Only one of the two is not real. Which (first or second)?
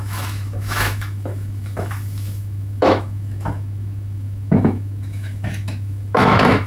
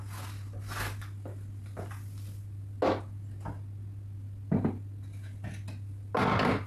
first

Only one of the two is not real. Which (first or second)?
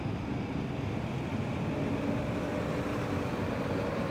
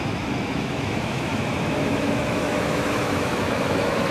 second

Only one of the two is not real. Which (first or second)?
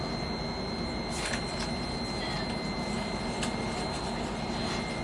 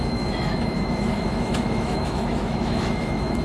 second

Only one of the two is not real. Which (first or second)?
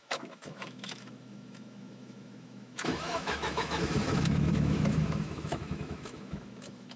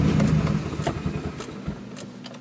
first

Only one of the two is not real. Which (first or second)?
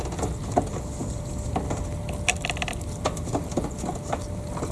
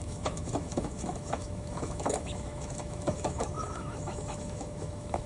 second